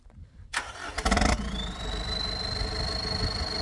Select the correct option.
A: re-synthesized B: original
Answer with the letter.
A